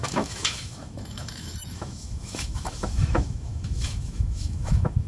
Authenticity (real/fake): fake